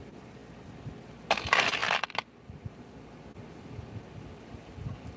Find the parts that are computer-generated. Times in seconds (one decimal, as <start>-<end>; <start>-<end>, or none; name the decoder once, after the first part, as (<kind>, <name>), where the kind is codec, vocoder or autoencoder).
none